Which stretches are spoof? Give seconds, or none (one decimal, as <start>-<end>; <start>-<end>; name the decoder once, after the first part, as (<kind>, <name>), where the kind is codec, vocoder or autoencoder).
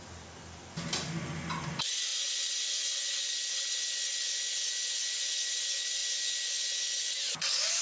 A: none